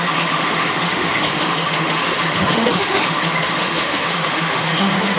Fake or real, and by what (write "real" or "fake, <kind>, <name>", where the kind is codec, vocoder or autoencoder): fake, autoencoder, DAC-VAE